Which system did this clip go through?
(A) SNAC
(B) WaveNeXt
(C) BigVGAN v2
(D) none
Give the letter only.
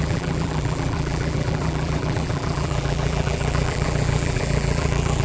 C